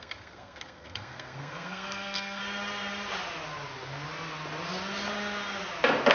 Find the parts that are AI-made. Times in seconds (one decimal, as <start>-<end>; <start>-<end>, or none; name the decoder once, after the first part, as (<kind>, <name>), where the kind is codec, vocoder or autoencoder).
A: 0.0-2.4 (codec, SNAC)